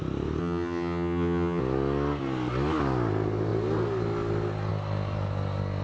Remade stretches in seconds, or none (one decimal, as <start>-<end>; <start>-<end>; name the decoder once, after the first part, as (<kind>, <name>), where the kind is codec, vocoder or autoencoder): 0.4-1.6 (vocoder, HiFi-GAN)